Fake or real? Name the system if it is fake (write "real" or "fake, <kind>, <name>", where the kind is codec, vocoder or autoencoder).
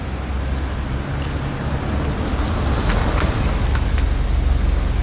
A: real